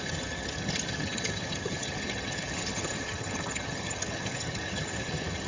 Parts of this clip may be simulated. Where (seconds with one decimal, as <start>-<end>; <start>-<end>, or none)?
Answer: 0.0-5.5